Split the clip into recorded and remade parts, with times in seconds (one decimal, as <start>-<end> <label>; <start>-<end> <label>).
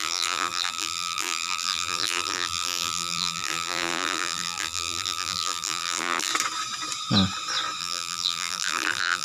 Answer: 0.0-6.3 remade; 6.3-7.8 recorded; 7.8-9.2 remade